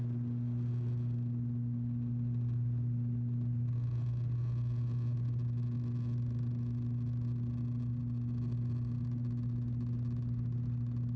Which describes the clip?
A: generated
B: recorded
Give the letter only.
B